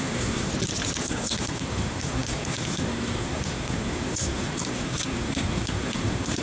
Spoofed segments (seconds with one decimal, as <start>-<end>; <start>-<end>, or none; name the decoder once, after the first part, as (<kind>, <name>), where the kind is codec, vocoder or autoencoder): 0.0-0.5 (codec, SNAC); 1.0-6.4